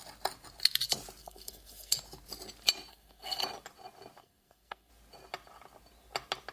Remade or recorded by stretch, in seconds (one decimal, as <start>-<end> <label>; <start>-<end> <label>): 0.0-1.2 recorded; 1.2-2.0 remade; 2.0-2.9 recorded; 2.9-3.4 remade; 3.4-4.2 recorded; 4.2-4.9 remade; 4.9-6.5 recorded